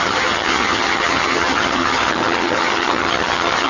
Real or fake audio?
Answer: fake